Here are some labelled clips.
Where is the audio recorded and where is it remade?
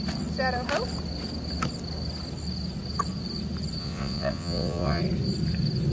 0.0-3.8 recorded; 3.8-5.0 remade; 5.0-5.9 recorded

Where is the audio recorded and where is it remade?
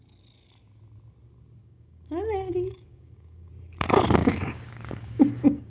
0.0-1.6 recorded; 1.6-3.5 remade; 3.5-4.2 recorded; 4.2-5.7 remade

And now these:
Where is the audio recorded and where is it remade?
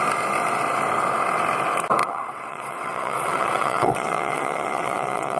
0.0-2.0 recorded; 2.0-5.4 remade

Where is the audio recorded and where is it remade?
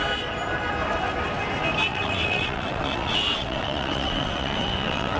0.0-1.9 recorded; 1.9-5.2 remade